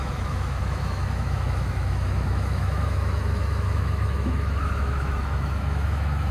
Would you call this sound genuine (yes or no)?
no